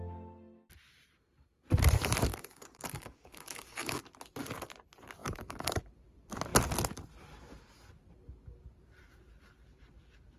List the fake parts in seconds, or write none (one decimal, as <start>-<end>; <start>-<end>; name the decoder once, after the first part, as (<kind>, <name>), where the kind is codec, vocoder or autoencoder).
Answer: 2.3-4.0 (codec, DAC); 5.2-5.8